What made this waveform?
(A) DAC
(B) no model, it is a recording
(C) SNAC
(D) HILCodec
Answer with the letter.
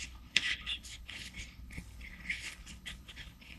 D